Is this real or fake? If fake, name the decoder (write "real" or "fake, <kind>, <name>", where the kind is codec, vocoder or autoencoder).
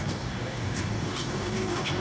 fake, codec, DAC